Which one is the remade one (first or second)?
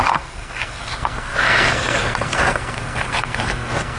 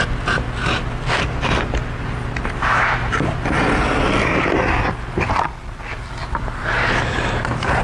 first